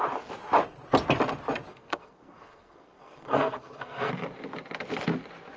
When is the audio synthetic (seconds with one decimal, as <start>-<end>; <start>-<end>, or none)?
1.7-4.1